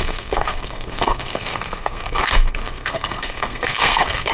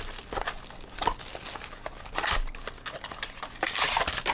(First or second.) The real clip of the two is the second